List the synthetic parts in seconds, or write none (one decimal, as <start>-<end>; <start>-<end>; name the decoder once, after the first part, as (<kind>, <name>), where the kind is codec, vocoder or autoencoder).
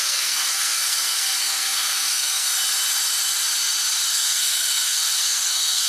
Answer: 0.0-2.5 (codec, SNAC); 4.1-5.9